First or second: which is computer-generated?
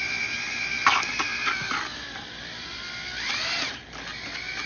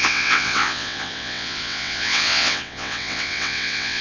second